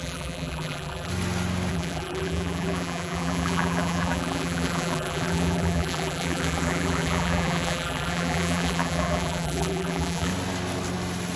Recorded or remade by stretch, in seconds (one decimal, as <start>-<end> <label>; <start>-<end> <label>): 0.0-1.1 remade; 1.1-1.7 recorded; 1.7-10.3 remade; 10.3-11.4 recorded